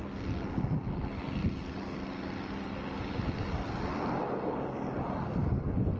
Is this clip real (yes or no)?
yes